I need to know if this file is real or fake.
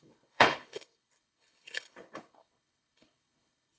fake